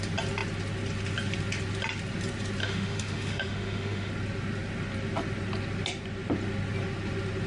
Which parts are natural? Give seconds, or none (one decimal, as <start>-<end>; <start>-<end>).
0.0-2.6; 4.1-7.5